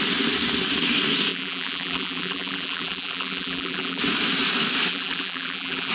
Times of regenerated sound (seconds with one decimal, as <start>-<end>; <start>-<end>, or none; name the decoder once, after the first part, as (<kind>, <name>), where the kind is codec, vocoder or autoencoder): 1.3-4.0 (vocoder, BigVGAN v2); 4.9-5.9